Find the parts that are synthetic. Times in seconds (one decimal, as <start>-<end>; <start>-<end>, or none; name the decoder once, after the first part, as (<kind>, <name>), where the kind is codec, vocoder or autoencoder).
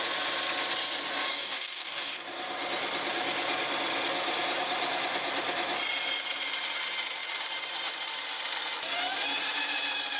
1.3-2.2 (codec, DAC)